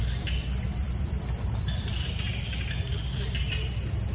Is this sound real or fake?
real